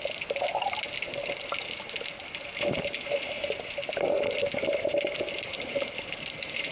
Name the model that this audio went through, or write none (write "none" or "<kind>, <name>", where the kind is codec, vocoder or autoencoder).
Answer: none